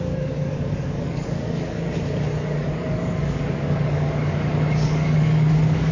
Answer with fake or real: fake